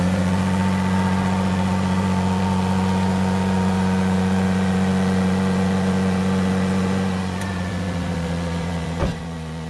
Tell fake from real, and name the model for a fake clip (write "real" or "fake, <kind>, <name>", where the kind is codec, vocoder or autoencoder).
fake, vocoder, Vocos